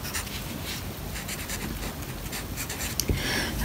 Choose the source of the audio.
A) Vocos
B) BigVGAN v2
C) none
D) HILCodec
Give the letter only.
C